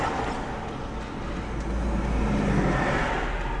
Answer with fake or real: real